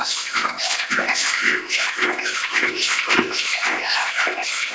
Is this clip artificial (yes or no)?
yes